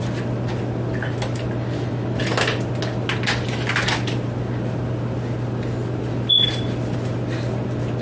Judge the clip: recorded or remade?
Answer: recorded